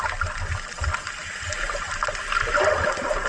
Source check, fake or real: real